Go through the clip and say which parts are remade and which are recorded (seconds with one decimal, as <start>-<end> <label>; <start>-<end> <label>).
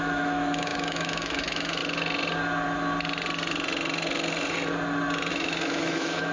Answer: 0.0-1.8 remade; 1.8-5.3 recorded; 5.3-6.3 remade